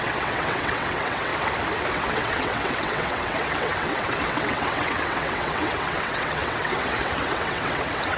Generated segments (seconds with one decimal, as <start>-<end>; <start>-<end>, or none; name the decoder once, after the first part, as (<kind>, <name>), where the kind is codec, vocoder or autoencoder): 0.0-1.3 (vocoder, WaveNeXt); 1.9-8.2

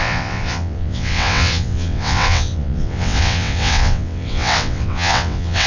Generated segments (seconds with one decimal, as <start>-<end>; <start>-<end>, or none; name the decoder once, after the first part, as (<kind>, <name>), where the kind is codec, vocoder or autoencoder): 0.0-5.7 (vocoder, WaveNeXt)

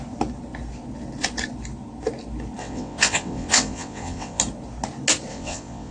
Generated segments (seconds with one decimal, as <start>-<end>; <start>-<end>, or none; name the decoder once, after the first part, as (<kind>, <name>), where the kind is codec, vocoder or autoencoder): 2.6-4.4 (vocoder, WaveNeXt); 5.3-5.9